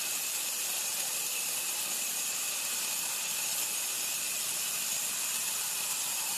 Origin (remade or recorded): recorded